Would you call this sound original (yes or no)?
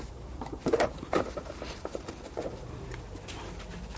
yes